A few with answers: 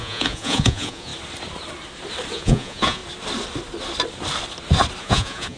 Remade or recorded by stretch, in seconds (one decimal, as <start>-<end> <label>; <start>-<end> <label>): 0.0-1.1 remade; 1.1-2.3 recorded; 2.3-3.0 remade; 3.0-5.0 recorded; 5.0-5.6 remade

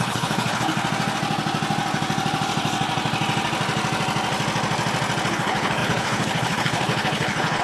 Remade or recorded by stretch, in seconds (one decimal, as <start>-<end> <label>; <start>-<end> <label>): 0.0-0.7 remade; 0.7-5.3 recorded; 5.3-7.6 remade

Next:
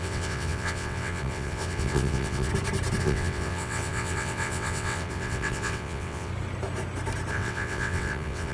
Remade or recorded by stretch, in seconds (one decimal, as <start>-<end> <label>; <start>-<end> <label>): 0.0-2.5 remade; 2.5-3.0 recorded; 3.0-6.3 remade; 6.3-7.3 recorded; 7.3-8.5 remade